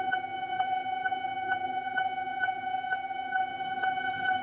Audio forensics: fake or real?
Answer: fake